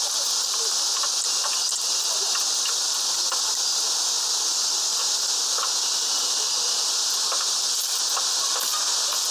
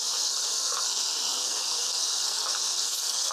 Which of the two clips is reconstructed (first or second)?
second